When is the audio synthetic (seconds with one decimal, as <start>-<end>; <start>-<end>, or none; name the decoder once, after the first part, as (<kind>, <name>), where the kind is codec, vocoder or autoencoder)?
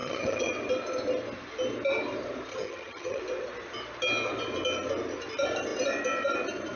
0.0-0.5 (vocoder, HiFi-GAN); 2.5-3.2